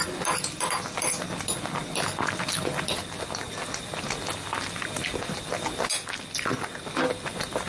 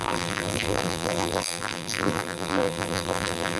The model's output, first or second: second